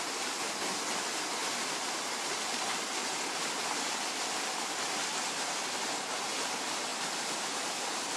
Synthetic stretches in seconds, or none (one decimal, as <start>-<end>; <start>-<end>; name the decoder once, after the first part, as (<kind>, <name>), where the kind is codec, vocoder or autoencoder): none